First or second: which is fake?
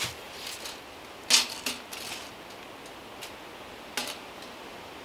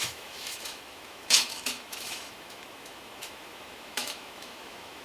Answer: second